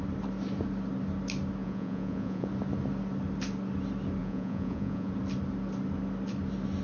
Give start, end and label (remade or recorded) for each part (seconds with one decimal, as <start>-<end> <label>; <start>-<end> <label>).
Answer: 0.0-1.6 recorded; 1.6-2.5 remade; 2.5-4.2 recorded; 4.2-5.1 remade; 5.1-6.8 recorded